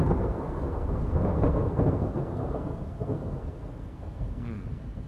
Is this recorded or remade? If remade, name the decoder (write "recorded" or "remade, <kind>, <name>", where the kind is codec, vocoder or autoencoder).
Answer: remade, codec, SNAC